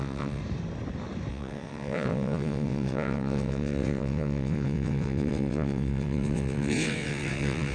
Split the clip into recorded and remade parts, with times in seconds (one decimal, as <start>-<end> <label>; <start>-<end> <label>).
0.0-0.4 remade; 0.4-1.3 recorded; 1.3-7.7 remade